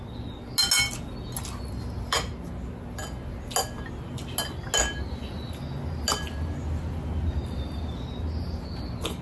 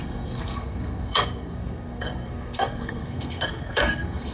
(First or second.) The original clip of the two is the first